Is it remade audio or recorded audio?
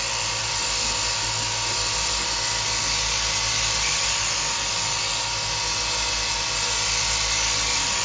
recorded